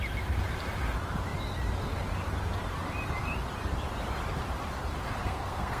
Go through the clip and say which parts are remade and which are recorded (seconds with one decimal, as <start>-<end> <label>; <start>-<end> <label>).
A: 0.0-5.2 recorded; 5.2-5.8 remade